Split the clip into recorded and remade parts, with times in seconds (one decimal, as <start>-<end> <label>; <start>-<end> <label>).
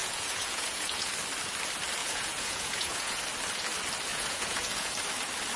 0.0-1.1 remade; 1.1-2.0 recorded; 2.0-3.2 remade; 3.2-4.1 recorded; 4.1-4.9 remade; 4.9-5.6 recorded